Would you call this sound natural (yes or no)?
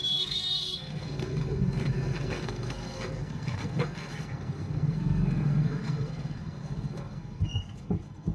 no